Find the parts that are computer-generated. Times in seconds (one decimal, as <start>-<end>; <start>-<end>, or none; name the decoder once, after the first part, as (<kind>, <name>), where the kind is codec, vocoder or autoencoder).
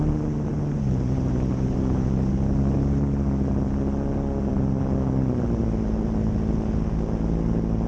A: 0.5-2.3 (vocoder, BigVGAN v2)